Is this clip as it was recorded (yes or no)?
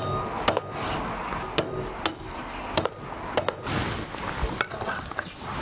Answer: yes